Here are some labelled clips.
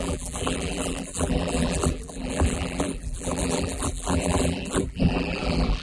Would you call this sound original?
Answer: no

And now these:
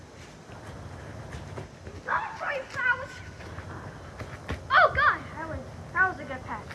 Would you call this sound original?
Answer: yes